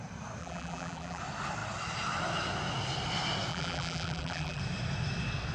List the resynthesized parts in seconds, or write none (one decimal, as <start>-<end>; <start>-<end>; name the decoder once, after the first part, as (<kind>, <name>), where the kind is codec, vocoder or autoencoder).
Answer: 0.4-1.2 (vocoder, BigVGAN v2); 3.5-4.6